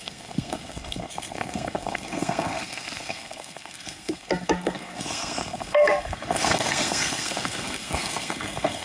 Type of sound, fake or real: fake